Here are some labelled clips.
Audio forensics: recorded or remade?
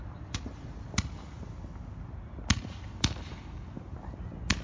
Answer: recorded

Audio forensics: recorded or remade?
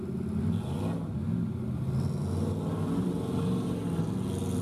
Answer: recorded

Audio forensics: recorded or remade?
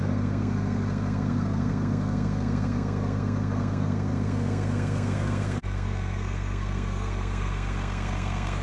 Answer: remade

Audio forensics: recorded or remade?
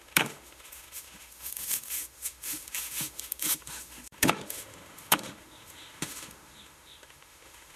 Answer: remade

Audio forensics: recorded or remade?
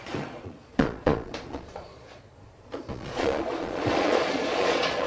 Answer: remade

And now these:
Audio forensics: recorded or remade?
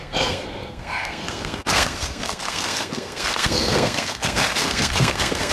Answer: remade